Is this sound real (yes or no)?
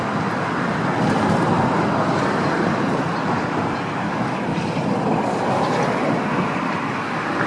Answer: yes